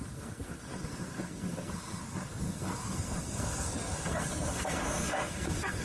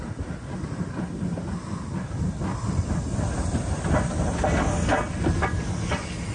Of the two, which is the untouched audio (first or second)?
second